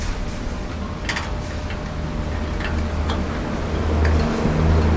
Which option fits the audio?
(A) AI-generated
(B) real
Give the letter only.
B